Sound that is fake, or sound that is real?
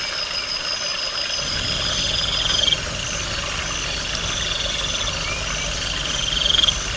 real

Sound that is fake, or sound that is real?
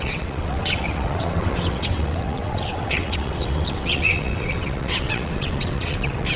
fake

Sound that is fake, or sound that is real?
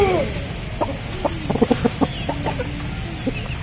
real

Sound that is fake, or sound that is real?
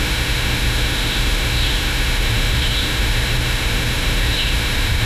fake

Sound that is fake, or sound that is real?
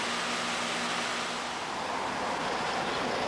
real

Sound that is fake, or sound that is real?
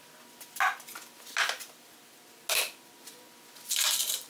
real